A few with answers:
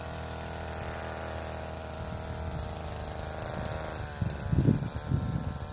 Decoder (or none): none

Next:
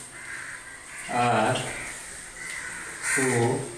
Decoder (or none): none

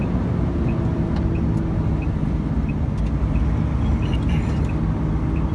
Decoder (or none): none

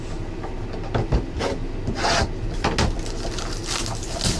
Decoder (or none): none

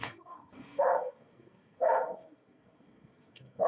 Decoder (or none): codec, SNAC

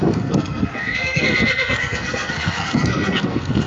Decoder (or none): codec, SNAC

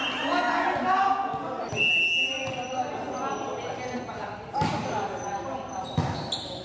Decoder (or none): none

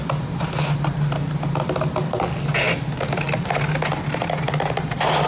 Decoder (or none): none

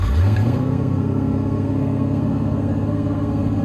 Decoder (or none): codec, SNAC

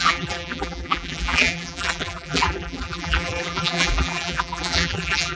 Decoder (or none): vocoder, BigVGAN v2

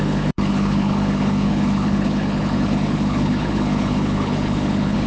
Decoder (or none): codec, HILCodec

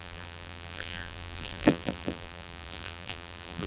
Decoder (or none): vocoder, BigVGAN v2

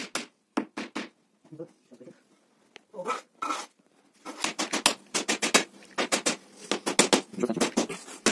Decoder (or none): none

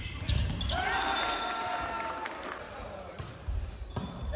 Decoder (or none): none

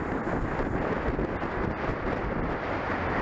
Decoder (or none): none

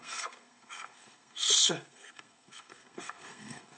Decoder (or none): codec, SNAC